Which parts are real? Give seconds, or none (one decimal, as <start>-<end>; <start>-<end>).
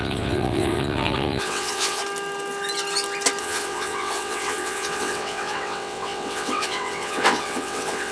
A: 2.0-3.4